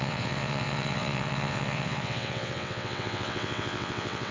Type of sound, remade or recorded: remade